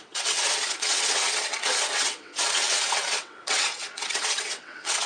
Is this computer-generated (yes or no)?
yes